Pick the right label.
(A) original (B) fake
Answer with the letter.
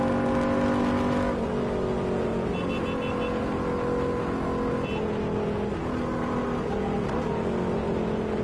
A